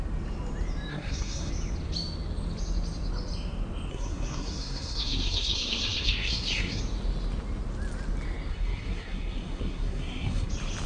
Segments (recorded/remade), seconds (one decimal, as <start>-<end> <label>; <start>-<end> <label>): 0.0-0.9 recorded; 0.9-1.5 remade; 1.5-3.9 recorded; 3.9-6.8 remade; 6.8-8.5 recorded; 8.5-10.5 remade; 10.5-10.9 recorded